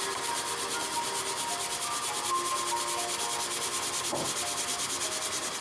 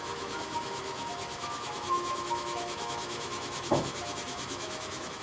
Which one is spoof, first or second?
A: second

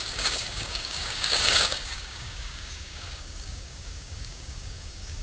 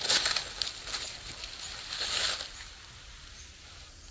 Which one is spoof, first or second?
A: first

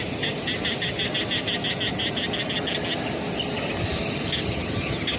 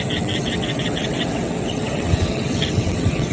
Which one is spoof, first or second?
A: second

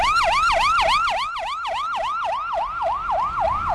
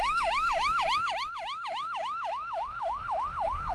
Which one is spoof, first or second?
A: second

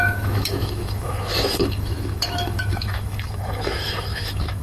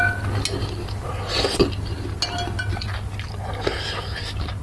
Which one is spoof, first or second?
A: first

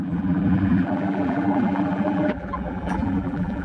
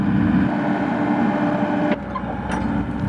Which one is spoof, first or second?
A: first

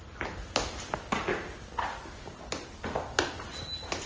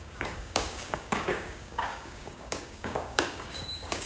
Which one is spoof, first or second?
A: second